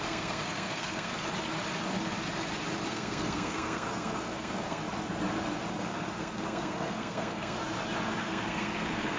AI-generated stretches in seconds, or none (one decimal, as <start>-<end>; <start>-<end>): 0.0-1.1; 2.9-4.8; 5.7-7.6; 8.2-9.2